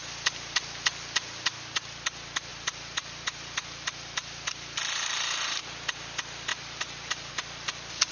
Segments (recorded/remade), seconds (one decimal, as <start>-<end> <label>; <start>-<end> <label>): 0.0-2.5 recorded; 2.5-5.6 remade; 5.6-6.5 recorded; 6.5-7.3 remade; 7.3-8.1 recorded